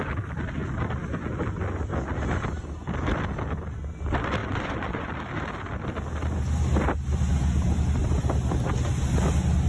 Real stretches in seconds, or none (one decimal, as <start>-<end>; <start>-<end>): 0.0-4.4; 5.1-9.7